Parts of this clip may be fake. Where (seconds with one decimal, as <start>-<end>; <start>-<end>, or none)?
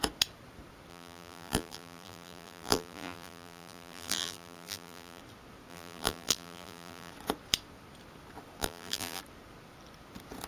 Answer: 0.9-5.2; 5.7-7.1; 8.6-9.2